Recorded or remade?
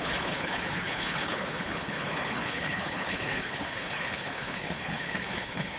remade